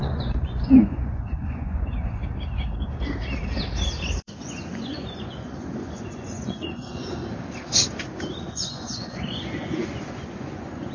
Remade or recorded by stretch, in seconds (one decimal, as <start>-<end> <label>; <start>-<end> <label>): 0.0-2.2 remade; 2.2-4.2 recorded; 4.2-7.2 remade; 7.2-8.4 recorded; 8.4-10.9 remade